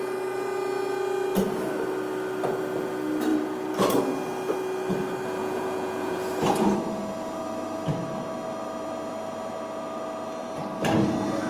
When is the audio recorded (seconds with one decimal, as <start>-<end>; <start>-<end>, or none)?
0.0-5.4; 6.3-11.5